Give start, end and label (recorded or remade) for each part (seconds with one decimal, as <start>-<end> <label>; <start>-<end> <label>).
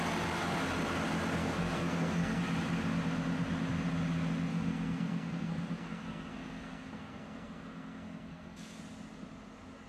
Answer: 0.0-1.4 recorded; 1.4-2.4 remade; 2.4-4.5 recorded; 4.5-8.8 remade; 8.8-9.9 recorded